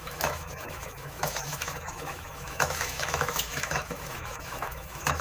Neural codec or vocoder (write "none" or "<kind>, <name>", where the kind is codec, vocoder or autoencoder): autoencoder, DAC-VAE